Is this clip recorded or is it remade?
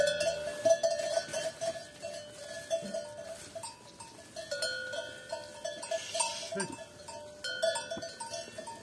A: recorded